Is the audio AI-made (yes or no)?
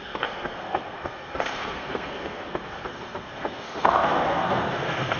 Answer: yes